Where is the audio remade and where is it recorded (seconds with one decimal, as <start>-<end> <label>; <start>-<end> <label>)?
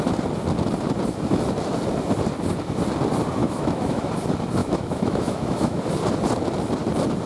0.0-3.4 recorded; 3.4-4.1 remade; 4.1-4.6 recorded; 4.6-5.8 remade; 5.8-7.3 recorded